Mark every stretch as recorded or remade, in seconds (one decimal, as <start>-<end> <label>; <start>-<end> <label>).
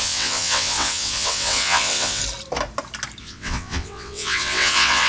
0.0-2.2 remade; 2.2-3.2 recorded; 3.2-5.1 remade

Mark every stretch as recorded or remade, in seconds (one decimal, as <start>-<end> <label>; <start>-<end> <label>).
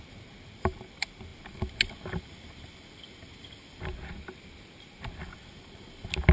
0.0-6.3 recorded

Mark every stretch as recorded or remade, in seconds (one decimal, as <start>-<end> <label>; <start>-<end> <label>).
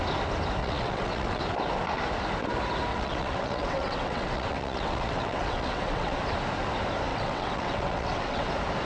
0.0-0.6 recorded; 0.6-1.4 remade; 1.4-2.9 recorded; 2.9-6.2 remade; 6.2-7.1 recorded; 7.1-8.5 remade; 8.5-8.9 recorded